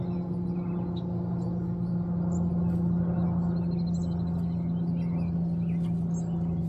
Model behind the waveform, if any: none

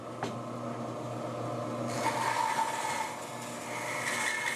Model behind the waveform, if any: none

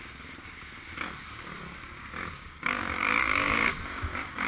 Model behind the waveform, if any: codec, DAC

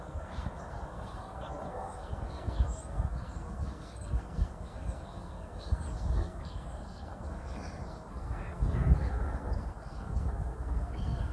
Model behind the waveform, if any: codec, SNAC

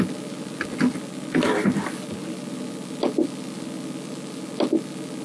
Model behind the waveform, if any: none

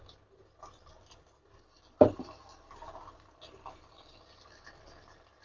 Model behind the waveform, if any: none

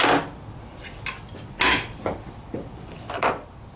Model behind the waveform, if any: none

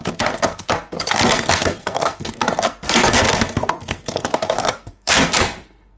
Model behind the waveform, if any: codec, SNAC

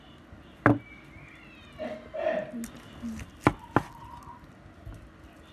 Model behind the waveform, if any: none